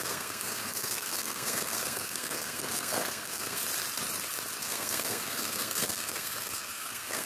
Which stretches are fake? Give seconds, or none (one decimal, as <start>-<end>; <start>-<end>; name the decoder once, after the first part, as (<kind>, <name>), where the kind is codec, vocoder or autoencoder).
0.0-3.6 (codec, SNAC); 4.6-7.3